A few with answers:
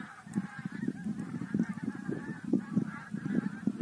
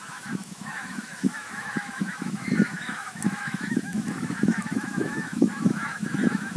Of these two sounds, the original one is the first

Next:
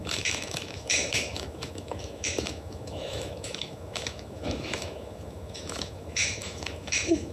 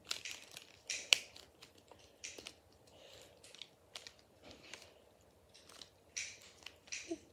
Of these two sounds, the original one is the second